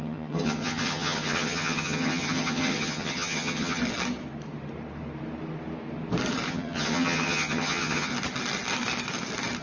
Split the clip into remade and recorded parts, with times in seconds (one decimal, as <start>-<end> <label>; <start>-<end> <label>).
0.0-3.8 remade; 3.8-6.5 recorded; 6.5-8.1 remade; 8.1-9.6 recorded